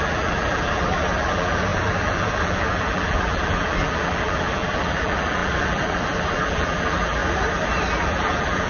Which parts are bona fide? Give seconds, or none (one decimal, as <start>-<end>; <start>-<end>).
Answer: 7.2-7.9